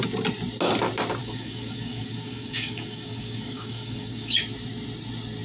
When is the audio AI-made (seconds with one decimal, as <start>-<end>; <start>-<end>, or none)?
1.2-4.4